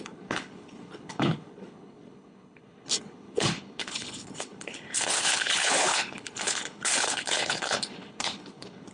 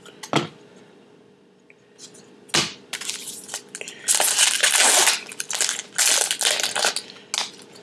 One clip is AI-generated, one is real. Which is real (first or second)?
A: second